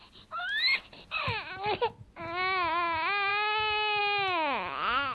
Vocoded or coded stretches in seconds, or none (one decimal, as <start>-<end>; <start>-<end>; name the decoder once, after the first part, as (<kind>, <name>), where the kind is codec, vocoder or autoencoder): none